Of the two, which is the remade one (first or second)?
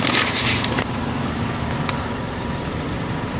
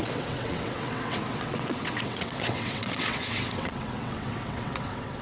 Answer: second